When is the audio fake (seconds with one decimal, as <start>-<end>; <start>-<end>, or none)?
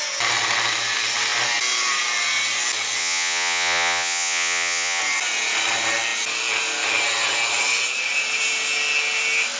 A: 3.0-5.0